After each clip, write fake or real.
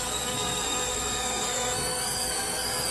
fake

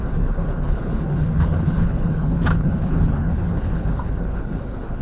fake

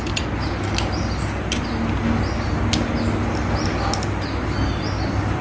real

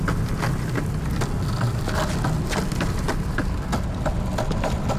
real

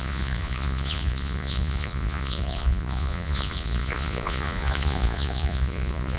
fake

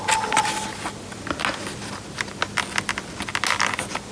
real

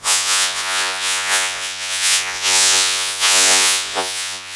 fake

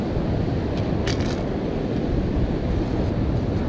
real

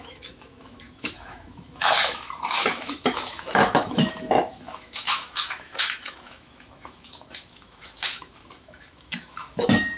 fake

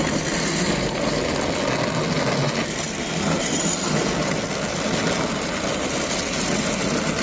real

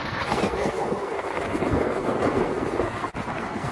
fake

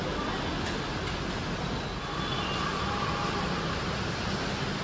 real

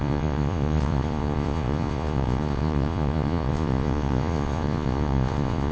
fake